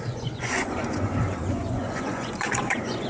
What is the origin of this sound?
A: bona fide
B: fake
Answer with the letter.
B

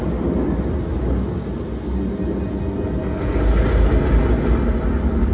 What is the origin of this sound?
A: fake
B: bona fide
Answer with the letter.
B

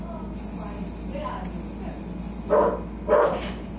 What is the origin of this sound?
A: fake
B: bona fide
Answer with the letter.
B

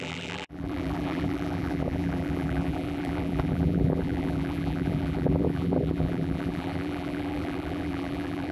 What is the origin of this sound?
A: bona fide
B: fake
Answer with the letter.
B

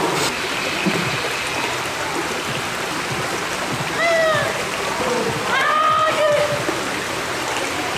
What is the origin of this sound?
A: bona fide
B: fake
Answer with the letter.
A